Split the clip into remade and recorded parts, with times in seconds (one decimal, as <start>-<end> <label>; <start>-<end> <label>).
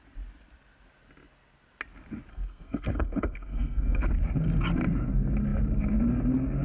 0.0-2.3 recorded; 2.3-4.0 remade; 4.0-6.6 recorded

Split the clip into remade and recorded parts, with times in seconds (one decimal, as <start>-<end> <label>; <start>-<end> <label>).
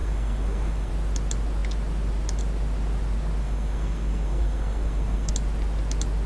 0.0-0.9 remade; 0.9-3.4 recorded; 3.4-5.3 remade; 5.3-6.3 recorded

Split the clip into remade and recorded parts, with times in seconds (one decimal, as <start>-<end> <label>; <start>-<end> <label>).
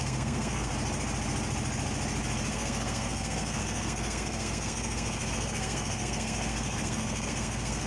0.0-0.7 remade; 0.7-2.5 recorded; 2.5-7.9 remade